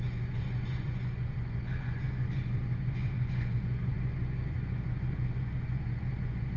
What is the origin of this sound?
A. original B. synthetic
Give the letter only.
B